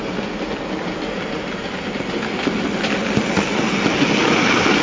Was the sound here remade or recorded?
recorded